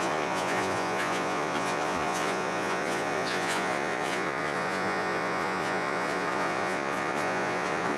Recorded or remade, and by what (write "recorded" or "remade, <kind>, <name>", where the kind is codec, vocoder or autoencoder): remade, vocoder, Vocos